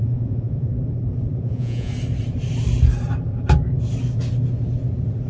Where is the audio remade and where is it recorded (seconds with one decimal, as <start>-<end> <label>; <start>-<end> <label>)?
0.0-0.7 remade; 0.7-1.4 recorded; 1.4-1.9 remade; 1.9-5.3 recorded